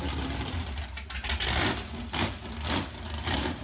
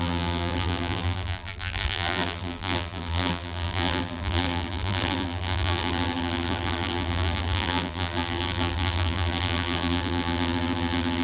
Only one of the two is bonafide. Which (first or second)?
first